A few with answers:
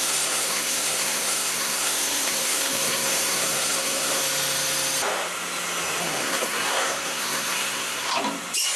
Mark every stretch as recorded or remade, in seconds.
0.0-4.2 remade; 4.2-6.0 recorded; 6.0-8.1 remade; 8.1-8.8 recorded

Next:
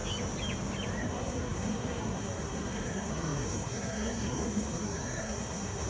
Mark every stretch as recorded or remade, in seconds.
0.0-1.0 recorded; 1.0-5.9 remade

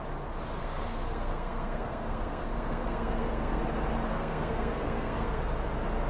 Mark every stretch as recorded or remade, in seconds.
0.0-0.6 recorded; 0.6-3.6 remade; 3.6-4.1 recorded; 4.1-5.4 remade; 5.4-6.1 recorded